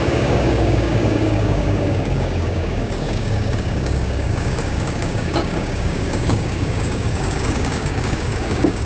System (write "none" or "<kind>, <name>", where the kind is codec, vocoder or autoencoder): codec, DAC